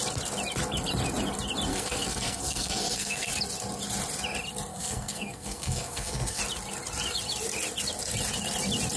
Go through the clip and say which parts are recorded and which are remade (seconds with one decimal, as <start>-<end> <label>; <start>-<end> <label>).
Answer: 0.0-1.7 recorded; 1.7-3.3 remade; 3.3-4.7 recorded; 4.7-6.4 remade; 6.4-9.0 recorded